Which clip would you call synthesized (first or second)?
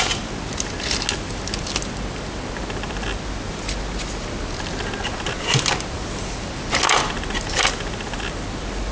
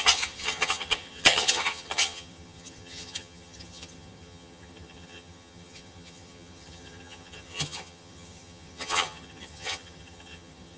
second